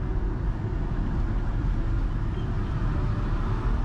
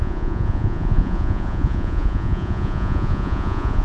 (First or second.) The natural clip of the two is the first